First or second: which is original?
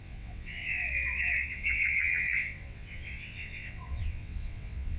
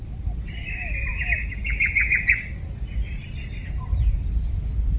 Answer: second